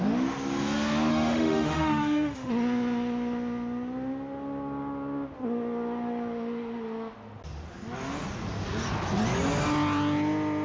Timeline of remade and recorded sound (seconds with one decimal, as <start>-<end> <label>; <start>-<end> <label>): 0.0-1.1 recorded; 1.1-2.5 remade; 2.5-10.6 recorded